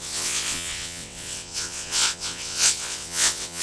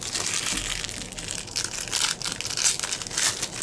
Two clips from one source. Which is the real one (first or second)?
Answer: second